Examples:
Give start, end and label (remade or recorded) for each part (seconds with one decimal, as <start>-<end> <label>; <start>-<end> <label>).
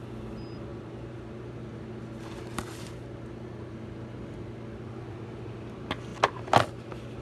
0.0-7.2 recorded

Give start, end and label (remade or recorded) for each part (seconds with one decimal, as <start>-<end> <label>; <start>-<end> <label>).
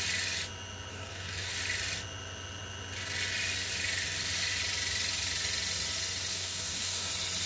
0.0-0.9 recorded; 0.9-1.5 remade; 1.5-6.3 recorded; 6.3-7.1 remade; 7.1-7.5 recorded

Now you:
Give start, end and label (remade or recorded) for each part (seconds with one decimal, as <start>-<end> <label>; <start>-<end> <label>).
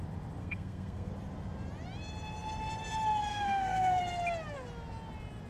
0.0-0.4 recorded; 0.4-1.1 remade; 1.1-3.3 recorded; 3.3-4.0 remade; 4.0-5.5 recorded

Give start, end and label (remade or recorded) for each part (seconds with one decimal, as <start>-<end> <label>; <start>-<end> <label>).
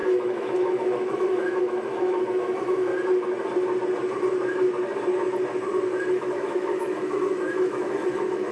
0.0-2.9 remade; 2.9-6.1 recorded; 6.1-8.5 remade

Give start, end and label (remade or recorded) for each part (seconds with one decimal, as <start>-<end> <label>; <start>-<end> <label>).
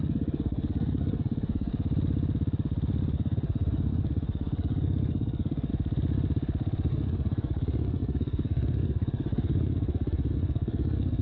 0.0-1.7 remade; 1.7-3.1 recorded; 3.1-5.7 remade; 5.7-6.9 recorded; 6.9-11.2 remade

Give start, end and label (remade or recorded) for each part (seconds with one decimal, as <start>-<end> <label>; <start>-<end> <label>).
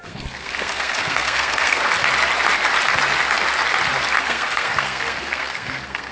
0.0-1.8 remade; 1.8-4.2 recorded; 4.2-6.1 remade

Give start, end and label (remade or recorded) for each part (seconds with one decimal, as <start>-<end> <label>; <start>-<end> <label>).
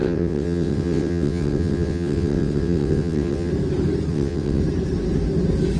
0.0-3.5 remade; 3.5-4.1 recorded; 4.1-4.6 remade; 4.6-5.8 recorded